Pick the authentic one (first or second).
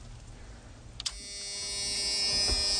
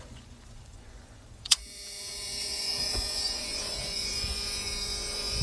first